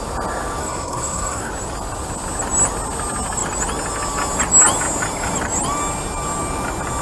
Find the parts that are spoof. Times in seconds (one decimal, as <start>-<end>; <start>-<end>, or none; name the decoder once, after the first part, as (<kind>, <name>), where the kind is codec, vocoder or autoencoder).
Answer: 0.6-1.5 (codec, SNAC)